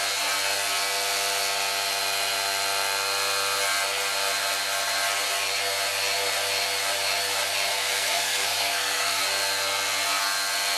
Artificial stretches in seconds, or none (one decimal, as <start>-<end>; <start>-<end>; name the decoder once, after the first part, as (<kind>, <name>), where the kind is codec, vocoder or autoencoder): 7.7-9.2 (codec, SNAC)